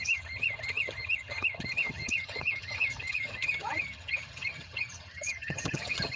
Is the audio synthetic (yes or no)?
yes